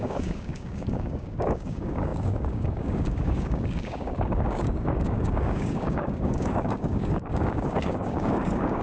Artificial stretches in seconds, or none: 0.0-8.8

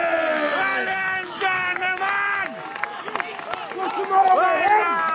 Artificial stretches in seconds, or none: 0.7-2.0